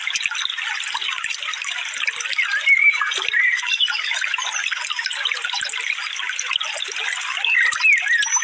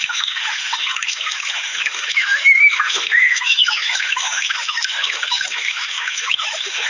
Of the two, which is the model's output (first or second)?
second